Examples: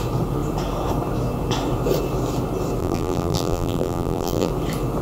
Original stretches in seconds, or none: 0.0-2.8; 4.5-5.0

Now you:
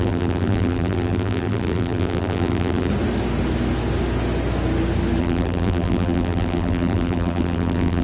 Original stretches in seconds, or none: 2.9-5.2